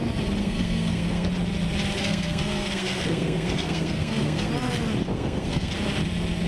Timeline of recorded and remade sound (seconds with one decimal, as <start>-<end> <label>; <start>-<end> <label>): 0.0-0.4 recorded; 0.4-1.3 remade; 1.3-2.0 recorded; 2.0-4.5 remade; 4.5-5.1 recorded; 5.1-5.7 remade; 5.7-6.5 recorded